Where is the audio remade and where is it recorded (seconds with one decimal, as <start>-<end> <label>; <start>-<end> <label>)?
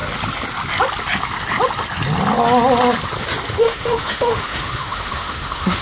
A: 0.0-3.5 recorded; 3.5-5.8 remade